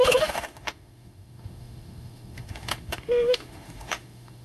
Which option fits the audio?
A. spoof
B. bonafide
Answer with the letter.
A